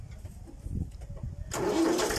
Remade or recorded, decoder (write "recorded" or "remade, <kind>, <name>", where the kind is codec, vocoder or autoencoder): recorded